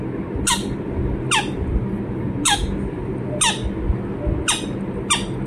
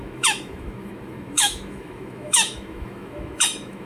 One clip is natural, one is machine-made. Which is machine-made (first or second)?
second